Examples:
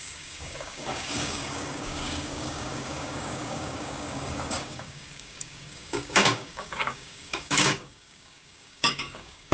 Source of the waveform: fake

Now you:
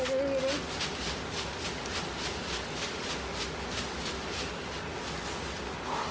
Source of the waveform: real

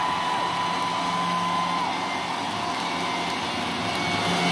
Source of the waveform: real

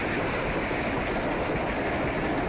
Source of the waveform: real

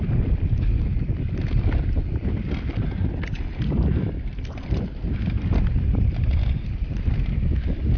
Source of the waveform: real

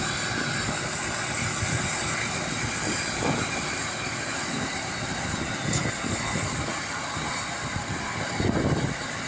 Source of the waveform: real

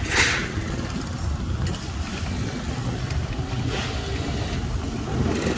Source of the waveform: real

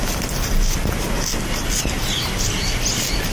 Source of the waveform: real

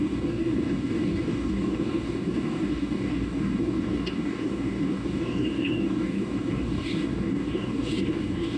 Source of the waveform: fake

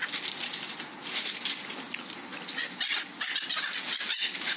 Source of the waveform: real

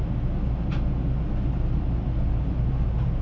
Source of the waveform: real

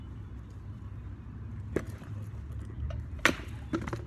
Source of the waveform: real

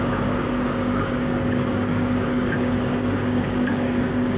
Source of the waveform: fake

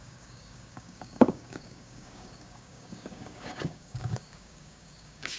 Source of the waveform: fake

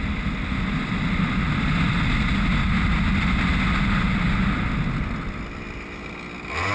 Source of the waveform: real